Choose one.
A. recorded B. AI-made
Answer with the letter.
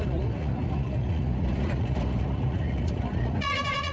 B